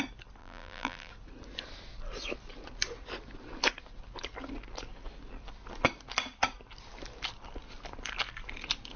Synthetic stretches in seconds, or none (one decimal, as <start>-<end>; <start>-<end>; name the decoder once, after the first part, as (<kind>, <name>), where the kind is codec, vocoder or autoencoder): 0.4-1.1 (vocoder, BigVGAN v2)

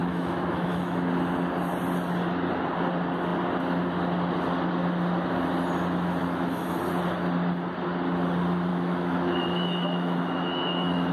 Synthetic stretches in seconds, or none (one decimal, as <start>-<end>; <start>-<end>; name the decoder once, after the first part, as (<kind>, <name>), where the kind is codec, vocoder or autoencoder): 0.0-1.1 (autoencoder, DAC-VAE); 6.2-6.8; 8.7-11.1

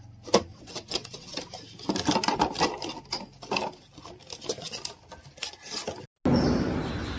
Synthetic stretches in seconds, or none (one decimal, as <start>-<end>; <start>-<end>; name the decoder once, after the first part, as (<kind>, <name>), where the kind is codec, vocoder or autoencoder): 0.5-1.4 (vocoder, WaveNeXt)